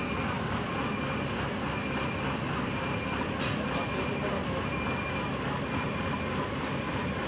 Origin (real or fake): real